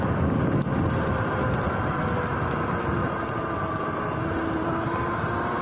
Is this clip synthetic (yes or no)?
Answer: no